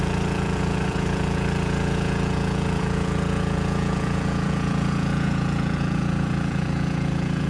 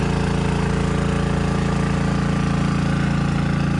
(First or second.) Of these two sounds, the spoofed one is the first